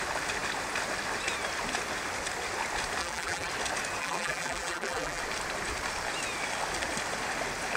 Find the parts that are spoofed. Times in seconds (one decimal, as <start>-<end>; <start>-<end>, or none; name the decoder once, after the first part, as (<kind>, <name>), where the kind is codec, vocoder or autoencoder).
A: 3.0-3.5 (vocoder, BigVGAN v2); 4.0-5.2